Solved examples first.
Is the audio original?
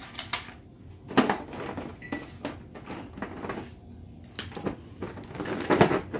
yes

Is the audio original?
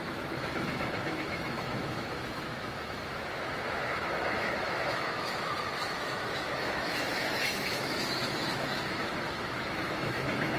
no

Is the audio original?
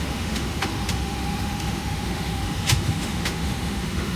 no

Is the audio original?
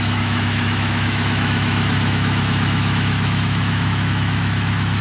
no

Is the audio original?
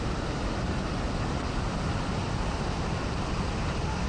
yes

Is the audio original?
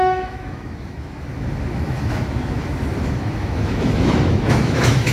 no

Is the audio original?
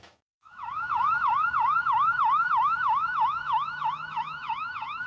no